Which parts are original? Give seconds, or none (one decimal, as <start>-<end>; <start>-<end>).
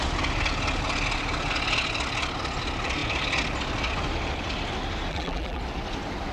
0.0-5.1; 5.6-6.3